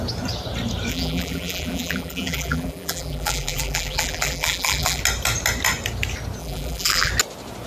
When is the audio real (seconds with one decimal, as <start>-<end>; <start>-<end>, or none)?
0.0-0.9; 5.0-6.4; 7.1-7.7